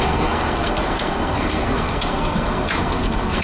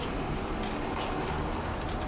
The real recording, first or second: second